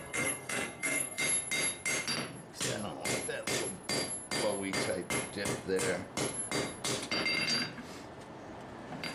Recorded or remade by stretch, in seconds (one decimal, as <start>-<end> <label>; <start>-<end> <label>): 0.0-1.2 remade; 1.2-9.1 recorded

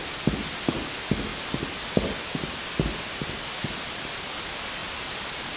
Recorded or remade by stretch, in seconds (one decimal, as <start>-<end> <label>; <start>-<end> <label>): 0.0-4.8 recorded; 4.8-5.6 remade

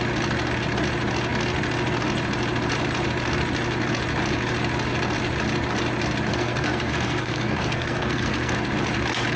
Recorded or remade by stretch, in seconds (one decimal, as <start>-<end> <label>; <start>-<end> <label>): 0.0-6.3 recorded; 6.3-8.7 remade; 8.7-9.4 recorded

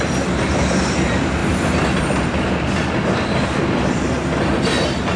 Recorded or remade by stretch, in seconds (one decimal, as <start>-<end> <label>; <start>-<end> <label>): 0.0-5.2 recorded

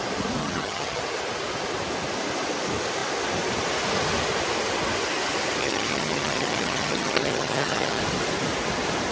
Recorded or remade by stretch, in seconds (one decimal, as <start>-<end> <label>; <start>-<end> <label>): 0.0-0.4 recorded; 0.4-1.0 remade; 1.0-5.6 recorded; 5.6-8.0 remade; 8.0-9.1 recorded

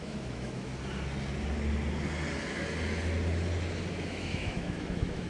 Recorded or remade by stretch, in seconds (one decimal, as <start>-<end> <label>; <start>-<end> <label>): 0.0-0.7 remade; 0.7-3.9 recorded; 3.9-5.3 remade

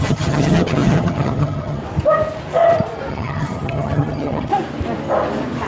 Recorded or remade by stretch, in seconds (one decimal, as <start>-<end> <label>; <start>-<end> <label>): 0.0-1.8 remade; 1.8-3.1 recorded; 3.1-4.5 remade; 4.5-5.7 recorded